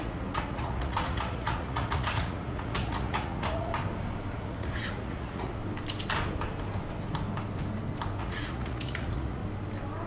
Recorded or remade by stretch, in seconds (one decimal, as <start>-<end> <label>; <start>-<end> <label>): 0.0-3.7 remade; 3.7-4.3 recorded; 4.3-5.6 remade; 5.6-8.2 recorded; 8.2-9.4 remade; 9.4-10.1 recorded